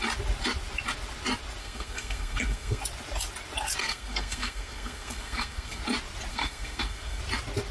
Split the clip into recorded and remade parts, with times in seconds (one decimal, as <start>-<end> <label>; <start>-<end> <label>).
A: 0.0-1.6 recorded; 1.6-2.8 remade; 2.8-3.8 recorded; 3.8-5.8 remade; 5.8-6.3 recorded; 6.3-7.2 remade; 7.2-7.7 recorded